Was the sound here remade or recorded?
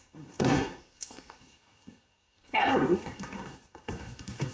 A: remade